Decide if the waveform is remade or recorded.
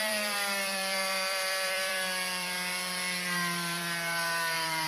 remade